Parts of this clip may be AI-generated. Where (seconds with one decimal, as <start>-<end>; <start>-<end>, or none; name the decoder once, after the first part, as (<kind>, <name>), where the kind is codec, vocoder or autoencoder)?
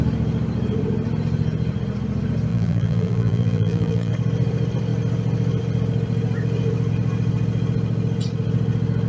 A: 2.5-4.1 (vocoder, BigVGAN v2)